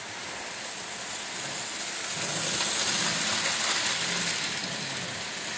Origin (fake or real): real